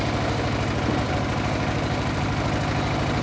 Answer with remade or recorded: recorded